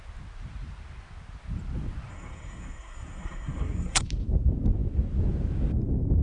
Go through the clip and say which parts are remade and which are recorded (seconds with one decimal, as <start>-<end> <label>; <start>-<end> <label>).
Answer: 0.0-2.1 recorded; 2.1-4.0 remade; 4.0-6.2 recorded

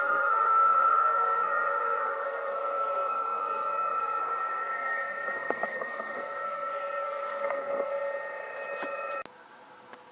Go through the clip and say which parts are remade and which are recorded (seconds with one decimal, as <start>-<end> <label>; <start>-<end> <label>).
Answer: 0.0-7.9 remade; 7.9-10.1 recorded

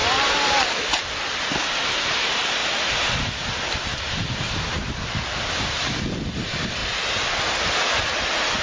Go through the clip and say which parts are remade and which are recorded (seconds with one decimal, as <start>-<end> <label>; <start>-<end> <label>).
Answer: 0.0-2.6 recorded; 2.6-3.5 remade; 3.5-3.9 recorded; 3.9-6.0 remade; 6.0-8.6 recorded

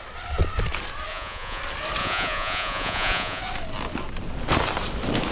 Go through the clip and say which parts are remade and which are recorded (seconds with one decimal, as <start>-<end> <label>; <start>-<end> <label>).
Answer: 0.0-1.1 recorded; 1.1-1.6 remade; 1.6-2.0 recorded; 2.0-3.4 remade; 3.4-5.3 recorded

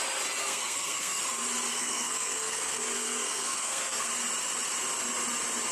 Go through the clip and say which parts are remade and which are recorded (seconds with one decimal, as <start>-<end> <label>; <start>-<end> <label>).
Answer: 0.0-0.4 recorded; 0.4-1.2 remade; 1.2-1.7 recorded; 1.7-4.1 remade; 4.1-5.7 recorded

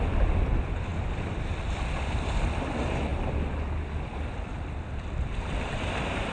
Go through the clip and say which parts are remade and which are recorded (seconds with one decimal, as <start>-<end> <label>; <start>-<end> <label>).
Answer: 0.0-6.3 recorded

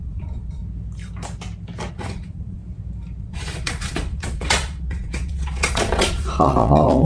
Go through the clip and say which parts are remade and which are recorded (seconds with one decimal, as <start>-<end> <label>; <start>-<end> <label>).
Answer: 0.0-0.6 remade; 0.6-1.9 recorded; 1.9-2.6 remade; 2.6-3.2 recorded; 3.2-7.0 remade

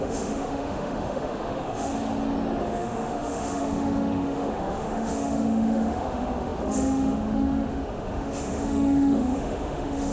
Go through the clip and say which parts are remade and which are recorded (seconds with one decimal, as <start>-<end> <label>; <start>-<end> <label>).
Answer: 0.0-1.9 remade; 1.9-2.6 recorded; 2.6-10.1 remade